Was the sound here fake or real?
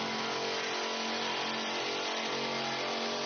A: real